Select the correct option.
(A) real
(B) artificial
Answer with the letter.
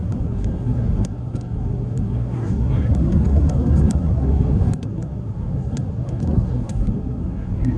B